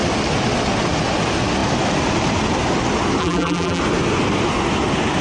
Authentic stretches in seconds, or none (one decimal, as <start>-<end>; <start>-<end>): 0.0-3.2; 3.8-5.2